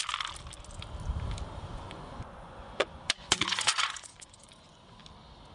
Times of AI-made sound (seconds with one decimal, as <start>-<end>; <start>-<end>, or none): 1.7-5.0